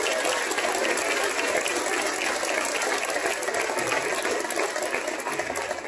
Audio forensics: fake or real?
real